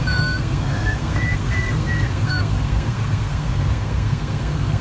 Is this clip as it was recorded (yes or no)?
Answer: no